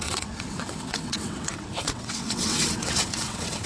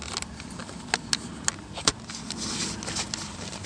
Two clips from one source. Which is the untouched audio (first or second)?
second